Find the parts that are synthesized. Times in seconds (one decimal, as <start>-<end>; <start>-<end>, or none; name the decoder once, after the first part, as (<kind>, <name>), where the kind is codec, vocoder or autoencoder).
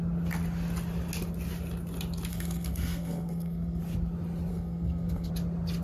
2.3-3.8 (codec, SNAC); 4.5-5.3